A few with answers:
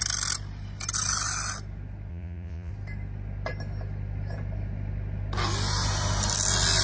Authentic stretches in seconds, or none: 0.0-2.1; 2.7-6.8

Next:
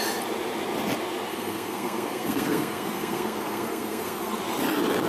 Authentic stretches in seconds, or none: 0.0-1.3; 4.4-5.1

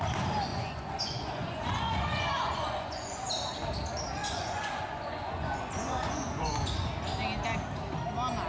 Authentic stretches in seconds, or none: 0.0-0.5; 3.3-4.2; 6.9-8.5

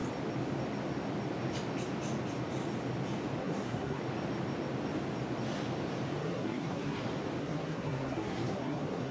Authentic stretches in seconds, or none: 0.0-3.4; 4.0-6.2; 7.0-7.4